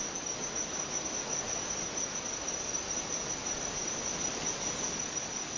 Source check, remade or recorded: recorded